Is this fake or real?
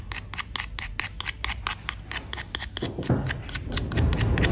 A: real